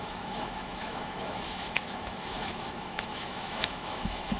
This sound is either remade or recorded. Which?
remade